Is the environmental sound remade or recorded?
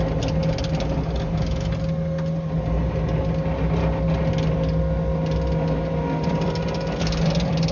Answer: recorded